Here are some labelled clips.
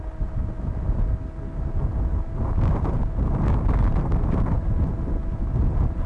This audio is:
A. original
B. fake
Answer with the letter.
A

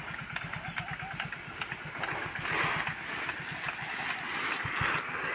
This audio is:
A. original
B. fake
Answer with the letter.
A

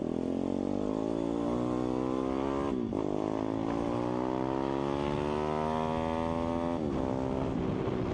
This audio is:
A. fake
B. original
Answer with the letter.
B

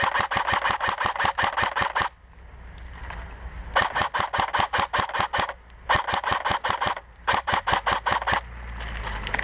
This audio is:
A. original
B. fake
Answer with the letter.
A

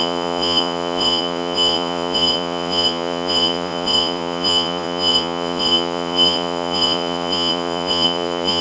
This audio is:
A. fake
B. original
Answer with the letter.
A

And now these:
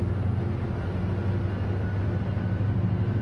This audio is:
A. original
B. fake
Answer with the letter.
A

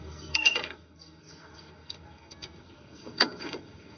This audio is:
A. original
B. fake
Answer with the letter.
B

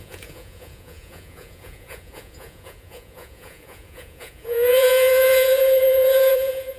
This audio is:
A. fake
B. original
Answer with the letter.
A